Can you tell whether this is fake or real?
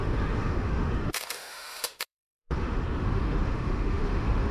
fake